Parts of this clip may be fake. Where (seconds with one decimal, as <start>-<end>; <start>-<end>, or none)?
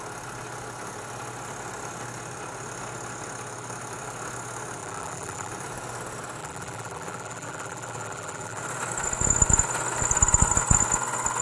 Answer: 4.8-5.5; 6.4-8.6